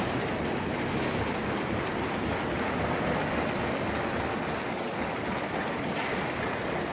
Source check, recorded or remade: recorded